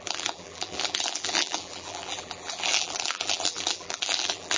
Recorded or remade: remade